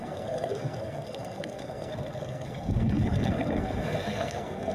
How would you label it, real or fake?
fake